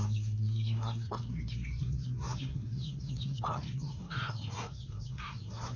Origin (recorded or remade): remade